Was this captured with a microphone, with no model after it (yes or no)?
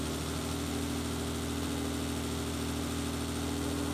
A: yes